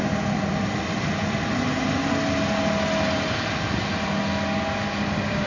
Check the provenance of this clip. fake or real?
real